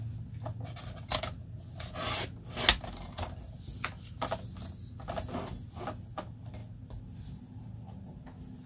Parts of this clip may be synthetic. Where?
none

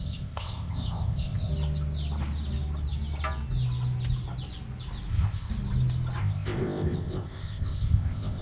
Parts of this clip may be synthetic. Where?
0.0-1.5; 5.1-5.5; 6.2-8.4